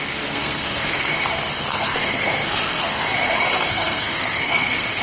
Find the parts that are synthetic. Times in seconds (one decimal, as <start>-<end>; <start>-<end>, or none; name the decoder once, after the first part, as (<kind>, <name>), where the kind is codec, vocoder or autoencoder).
0.0-1.1 (codec, SNAC); 1.7-3.0; 3.7-5.0